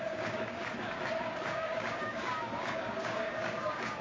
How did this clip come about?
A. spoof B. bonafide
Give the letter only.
A